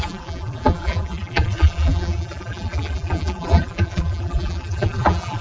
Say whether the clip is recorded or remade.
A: remade